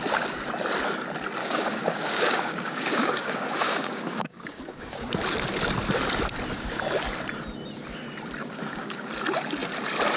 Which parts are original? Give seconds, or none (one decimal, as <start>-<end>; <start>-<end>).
0.0-1.4; 5.1-8.4; 9.1-10.2